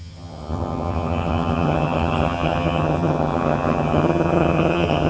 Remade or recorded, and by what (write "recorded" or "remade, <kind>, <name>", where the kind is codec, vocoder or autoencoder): remade, vocoder, HiFi-GAN